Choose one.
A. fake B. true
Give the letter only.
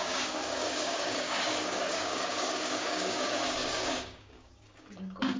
A